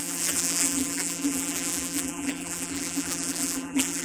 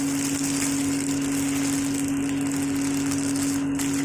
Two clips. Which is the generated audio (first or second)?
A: first